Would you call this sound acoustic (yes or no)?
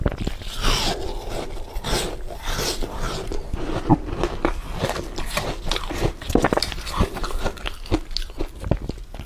yes